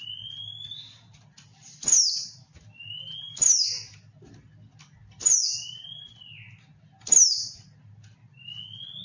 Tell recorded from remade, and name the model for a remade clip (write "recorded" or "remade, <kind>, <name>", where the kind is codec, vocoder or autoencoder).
recorded